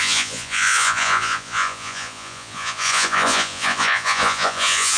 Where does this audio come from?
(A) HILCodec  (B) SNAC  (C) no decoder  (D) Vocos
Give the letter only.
D